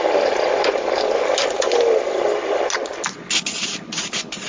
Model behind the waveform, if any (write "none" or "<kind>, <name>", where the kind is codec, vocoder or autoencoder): none